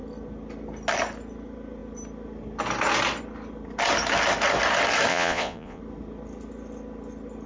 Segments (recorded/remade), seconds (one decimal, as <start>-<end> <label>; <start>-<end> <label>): 0.0-5.1 recorded; 5.1-5.8 remade; 5.8-7.5 recorded